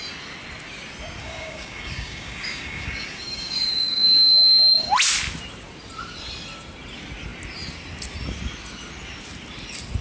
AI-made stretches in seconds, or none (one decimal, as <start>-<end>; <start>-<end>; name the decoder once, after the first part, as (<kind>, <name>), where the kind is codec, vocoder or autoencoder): 1.2-4.9 (codec, DAC)